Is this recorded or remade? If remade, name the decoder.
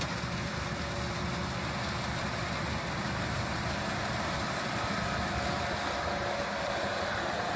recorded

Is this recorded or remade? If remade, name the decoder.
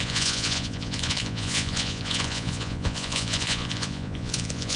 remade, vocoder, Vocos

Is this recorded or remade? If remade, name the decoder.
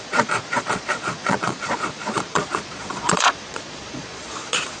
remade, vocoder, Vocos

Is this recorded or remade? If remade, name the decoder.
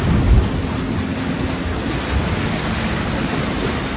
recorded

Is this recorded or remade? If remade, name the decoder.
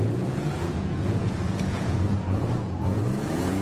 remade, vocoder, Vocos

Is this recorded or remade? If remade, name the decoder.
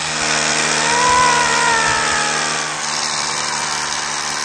recorded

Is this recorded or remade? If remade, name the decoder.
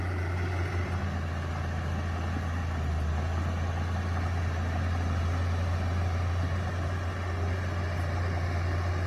recorded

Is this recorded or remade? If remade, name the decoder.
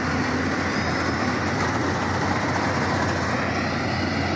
recorded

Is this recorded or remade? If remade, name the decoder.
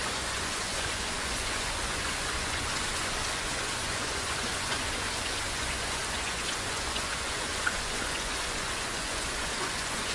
remade, vocoder, Vocos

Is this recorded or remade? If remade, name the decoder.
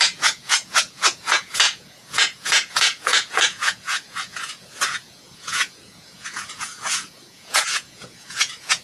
remade, vocoder, Vocos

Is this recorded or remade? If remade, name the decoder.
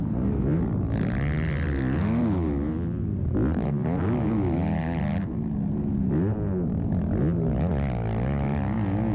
recorded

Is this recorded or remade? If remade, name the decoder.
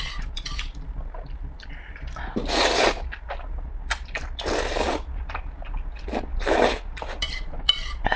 recorded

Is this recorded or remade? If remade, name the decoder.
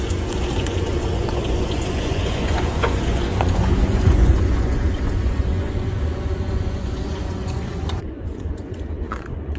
remade, vocoder, Vocos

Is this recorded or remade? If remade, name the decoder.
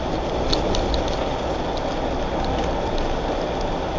recorded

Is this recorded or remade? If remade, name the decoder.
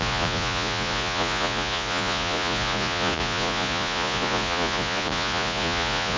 remade, vocoder, Vocos